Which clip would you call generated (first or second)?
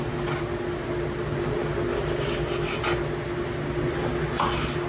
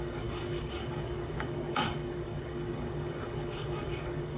second